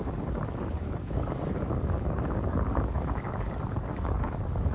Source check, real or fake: fake